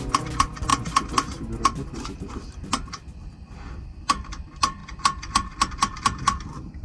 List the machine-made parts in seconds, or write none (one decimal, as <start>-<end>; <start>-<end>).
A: 0.0-0.7; 3.7-6.8